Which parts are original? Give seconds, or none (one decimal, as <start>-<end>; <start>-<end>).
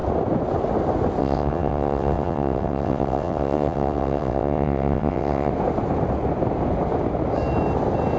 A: 0.0-1.2; 5.5-8.2